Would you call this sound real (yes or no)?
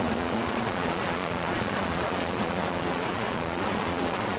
no